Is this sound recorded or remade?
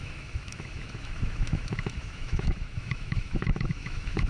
remade